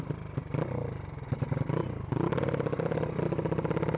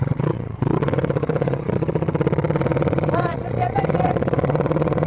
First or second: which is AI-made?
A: second